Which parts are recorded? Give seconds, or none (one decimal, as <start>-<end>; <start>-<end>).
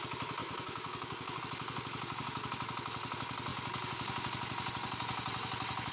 0.0-0.4; 1.4-5.9